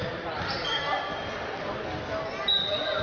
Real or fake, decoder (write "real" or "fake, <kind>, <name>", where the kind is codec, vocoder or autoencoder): real